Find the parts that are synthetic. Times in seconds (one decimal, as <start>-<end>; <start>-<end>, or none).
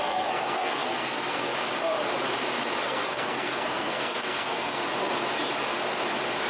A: 0.0-1.5; 2.8-4.8